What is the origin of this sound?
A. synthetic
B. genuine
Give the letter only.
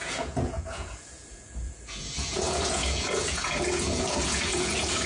A